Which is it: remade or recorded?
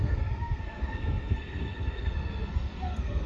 remade